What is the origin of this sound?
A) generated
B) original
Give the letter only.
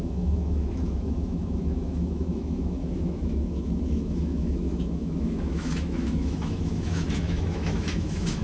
A